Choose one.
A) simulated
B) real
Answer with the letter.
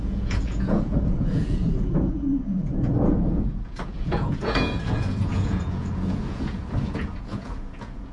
A